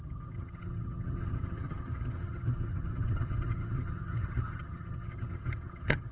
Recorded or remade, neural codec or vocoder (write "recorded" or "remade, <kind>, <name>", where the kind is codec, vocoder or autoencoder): remade, vocoder, HiFi-GAN